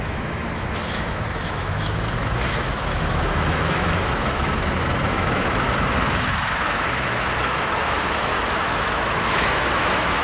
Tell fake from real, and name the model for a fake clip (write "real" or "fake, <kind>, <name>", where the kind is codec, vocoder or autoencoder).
fake, autoencoder, DAC-VAE